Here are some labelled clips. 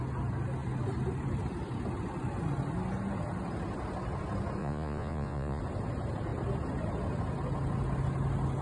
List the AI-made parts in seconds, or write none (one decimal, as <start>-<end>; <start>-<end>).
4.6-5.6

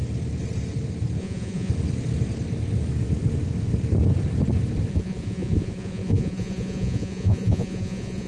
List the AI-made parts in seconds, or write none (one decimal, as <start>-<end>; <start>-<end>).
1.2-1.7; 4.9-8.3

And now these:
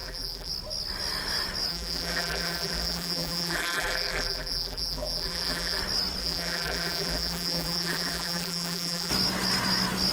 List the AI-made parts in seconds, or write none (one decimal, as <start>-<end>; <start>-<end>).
0.0-0.5; 1.7-5.8; 6.2-9.1

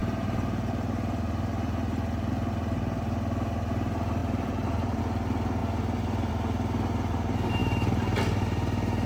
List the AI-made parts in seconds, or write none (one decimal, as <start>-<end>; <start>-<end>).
4.2-5.0

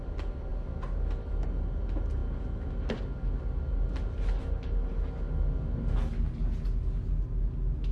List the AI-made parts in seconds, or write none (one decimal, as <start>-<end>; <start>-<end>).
none

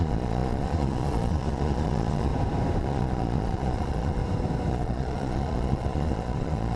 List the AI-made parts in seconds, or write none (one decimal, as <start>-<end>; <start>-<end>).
0.0-2.3; 2.8-4.2; 4.7-6.8